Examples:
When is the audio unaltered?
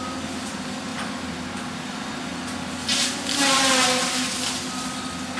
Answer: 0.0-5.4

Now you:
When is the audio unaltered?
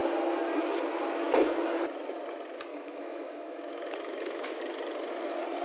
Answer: 0.0-2.7; 4.6-5.6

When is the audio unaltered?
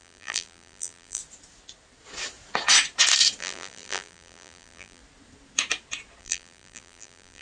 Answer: 1.2-3.4; 5.0-6.2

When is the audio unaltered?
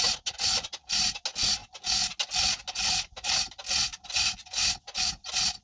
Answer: 0.0-5.6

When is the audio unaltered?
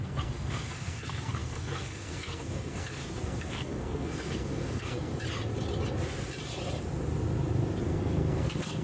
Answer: 5.1-7.8